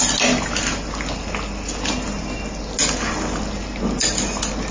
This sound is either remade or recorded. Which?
recorded